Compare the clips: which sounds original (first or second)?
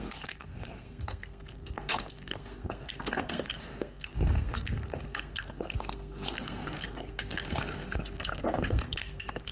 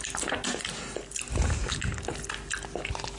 second